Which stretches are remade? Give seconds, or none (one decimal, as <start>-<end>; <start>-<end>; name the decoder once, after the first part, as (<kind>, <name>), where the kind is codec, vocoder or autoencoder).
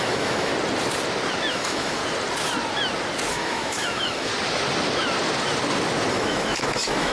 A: 0.0-0.5 (autoencoder, DAC-VAE); 1.5-2.0; 3.3-4.3; 6.1-7.1